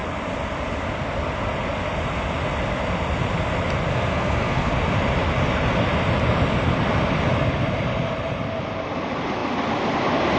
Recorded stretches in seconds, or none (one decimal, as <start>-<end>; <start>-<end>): 0.0-3.9; 4.7-10.4